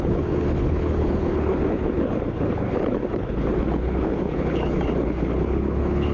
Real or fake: fake